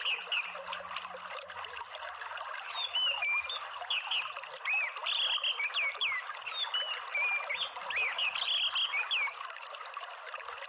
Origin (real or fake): real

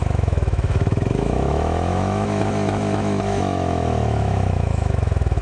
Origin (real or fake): fake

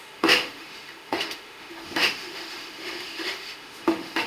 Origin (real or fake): fake